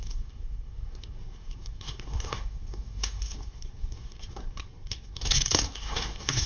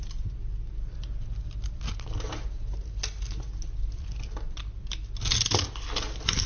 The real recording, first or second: second